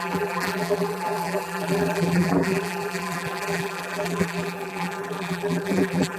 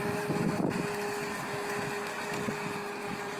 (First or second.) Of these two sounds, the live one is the second